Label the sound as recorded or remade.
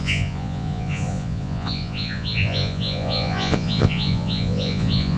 remade